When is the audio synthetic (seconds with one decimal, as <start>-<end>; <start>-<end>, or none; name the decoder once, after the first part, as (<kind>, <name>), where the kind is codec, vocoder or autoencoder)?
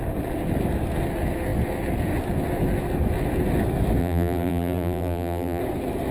4.0-5.6 (vocoder, BigVGAN v2)